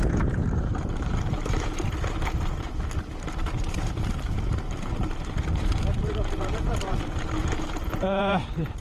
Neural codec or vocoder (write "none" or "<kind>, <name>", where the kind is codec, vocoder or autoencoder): vocoder, BigVGAN v2